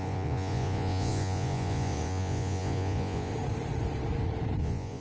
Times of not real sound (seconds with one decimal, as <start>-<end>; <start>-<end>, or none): 0.0-3.3; 4.6-5.0